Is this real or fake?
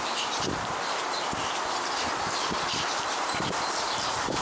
fake